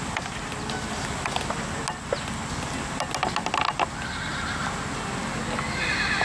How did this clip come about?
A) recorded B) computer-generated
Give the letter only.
A